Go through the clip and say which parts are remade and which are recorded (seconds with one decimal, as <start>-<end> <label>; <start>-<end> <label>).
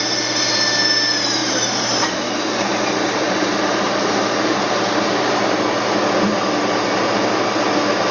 0.0-1.4 recorded; 1.4-5.6 remade; 5.6-8.1 recorded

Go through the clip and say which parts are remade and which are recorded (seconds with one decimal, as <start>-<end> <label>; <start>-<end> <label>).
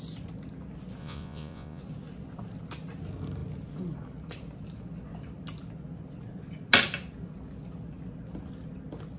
0.0-1.0 recorded; 1.0-1.8 remade; 1.8-9.2 recorded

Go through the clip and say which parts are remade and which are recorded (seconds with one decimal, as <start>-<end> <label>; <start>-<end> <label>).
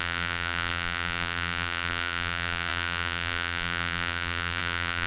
0.0-5.1 remade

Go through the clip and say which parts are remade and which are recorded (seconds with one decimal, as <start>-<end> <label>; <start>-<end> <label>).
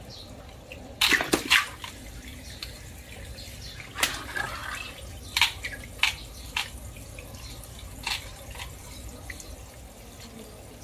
0.0-10.8 recorded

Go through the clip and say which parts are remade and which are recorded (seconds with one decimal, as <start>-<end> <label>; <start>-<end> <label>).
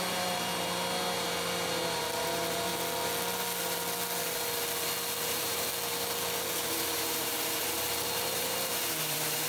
0.0-0.5 remade; 0.5-2.0 recorded; 2.0-2.7 remade; 2.7-5.3 recorded; 5.3-5.7 remade; 5.7-6.5 recorded; 6.5-9.5 remade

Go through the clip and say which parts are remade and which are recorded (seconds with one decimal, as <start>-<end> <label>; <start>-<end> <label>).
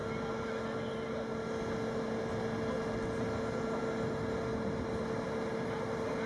0.0-6.3 recorded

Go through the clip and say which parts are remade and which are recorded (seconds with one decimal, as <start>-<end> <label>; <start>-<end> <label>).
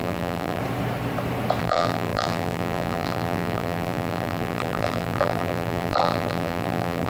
0.0-0.6 remade; 0.6-1.6 recorded; 1.6-7.1 remade